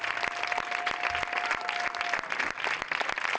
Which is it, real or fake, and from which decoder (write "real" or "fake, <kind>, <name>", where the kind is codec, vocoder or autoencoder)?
real